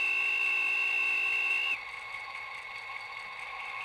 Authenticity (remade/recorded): recorded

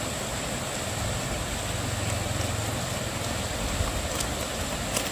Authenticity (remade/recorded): recorded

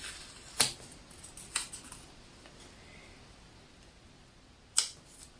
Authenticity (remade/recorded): recorded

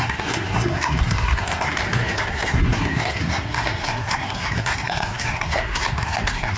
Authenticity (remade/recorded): remade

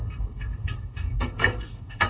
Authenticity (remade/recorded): remade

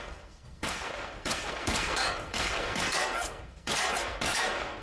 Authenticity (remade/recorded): remade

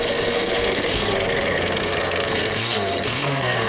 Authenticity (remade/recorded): remade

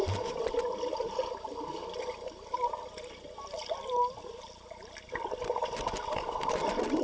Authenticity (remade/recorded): recorded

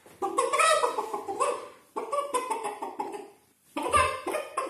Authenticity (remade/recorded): recorded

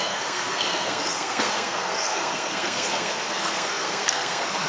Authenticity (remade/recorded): remade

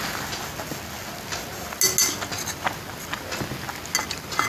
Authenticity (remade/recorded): recorded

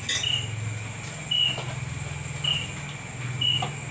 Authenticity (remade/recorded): recorded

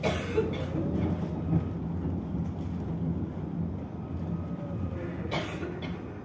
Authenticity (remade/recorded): recorded